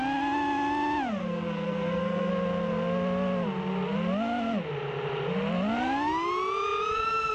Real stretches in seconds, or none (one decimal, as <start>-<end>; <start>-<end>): 0.0-1.2; 2.3-7.3